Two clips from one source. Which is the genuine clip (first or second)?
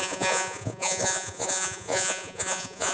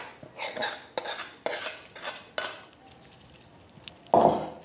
second